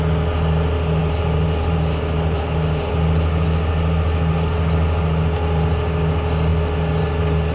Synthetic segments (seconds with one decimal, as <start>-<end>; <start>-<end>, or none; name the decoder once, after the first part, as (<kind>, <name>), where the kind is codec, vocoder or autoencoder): 1.0-2.9 (vocoder, BigVGAN v2)